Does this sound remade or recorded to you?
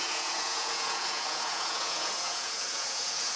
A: remade